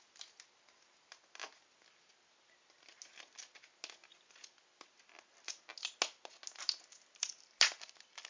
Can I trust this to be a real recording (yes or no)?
yes